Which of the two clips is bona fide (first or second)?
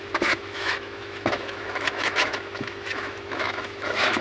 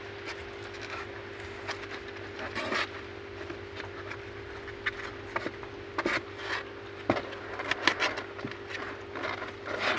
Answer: second